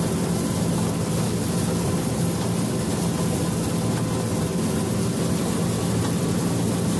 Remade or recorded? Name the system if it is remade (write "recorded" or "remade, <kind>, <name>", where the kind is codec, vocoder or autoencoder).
recorded